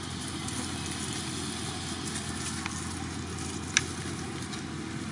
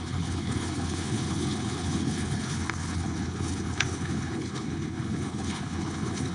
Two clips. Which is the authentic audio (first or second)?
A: first